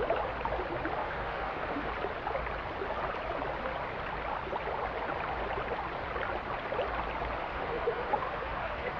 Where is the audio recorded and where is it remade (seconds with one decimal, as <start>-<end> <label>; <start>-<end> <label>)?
0.0-1.0 recorded; 1.0-1.9 remade; 1.9-7.4 recorded; 7.4-9.0 remade